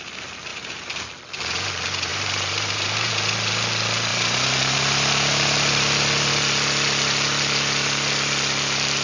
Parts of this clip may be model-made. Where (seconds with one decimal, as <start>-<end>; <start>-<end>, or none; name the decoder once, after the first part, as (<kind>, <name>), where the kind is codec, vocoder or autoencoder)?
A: 0.5-1.0 (vocoder, BigVGAN v2); 2.1-3.1; 4.1-6.3